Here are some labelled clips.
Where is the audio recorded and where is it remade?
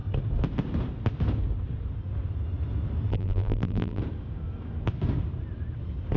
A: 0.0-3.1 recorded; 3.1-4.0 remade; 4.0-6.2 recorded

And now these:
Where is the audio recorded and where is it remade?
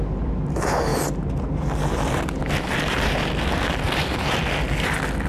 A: 0.0-5.3 recorded